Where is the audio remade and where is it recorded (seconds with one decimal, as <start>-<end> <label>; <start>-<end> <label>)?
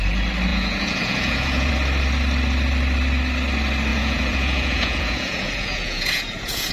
0.0-0.5 recorded; 0.5-1.7 remade; 1.7-3.9 recorded; 3.9-6.7 remade